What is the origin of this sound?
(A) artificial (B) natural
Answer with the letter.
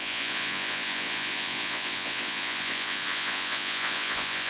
A